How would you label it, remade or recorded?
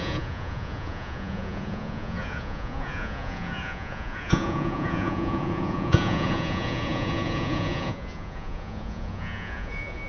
remade